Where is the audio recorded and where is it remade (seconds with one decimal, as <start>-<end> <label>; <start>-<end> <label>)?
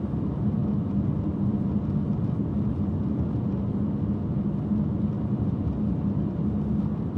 0.0-7.2 recorded